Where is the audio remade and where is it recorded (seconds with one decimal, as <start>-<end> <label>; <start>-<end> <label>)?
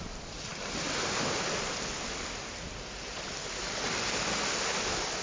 0.0-5.2 recorded